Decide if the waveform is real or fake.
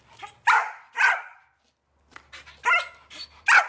real